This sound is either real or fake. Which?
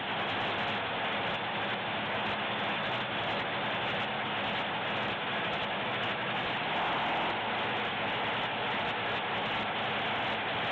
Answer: real